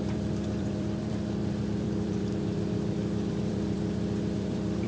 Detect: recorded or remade remade